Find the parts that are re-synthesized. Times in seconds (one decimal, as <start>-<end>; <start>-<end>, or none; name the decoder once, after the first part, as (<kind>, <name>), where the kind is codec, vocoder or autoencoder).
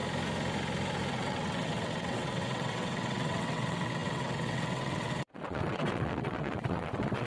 1.1-7.3 (vocoder, WaveNeXt)